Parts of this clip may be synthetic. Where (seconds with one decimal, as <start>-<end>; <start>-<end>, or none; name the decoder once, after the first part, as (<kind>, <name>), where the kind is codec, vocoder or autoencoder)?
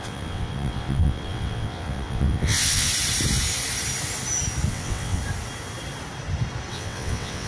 0.0-2.9 (vocoder, WaveNeXt); 4.7-5.2; 6.7-7.5